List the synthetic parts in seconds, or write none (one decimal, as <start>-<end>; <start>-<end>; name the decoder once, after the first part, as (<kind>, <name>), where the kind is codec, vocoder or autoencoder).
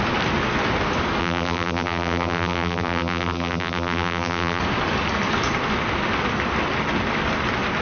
1.2-4.6 (vocoder, BigVGAN v2)